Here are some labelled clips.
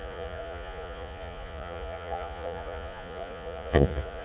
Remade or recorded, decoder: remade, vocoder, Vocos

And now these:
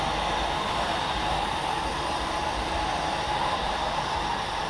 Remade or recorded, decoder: recorded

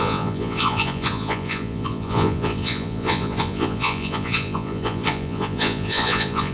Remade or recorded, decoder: remade, vocoder, Vocos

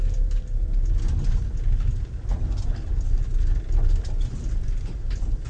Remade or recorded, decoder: recorded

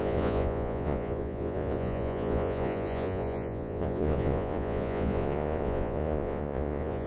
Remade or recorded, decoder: remade, vocoder, Vocos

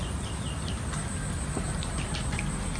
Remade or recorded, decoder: recorded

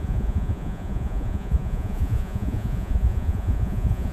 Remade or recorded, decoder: remade, vocoder, Vocos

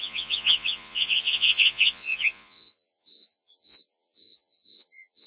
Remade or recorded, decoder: remade, vocoder, Vocos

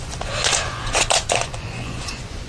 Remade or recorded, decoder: remade, vocoder, Vocos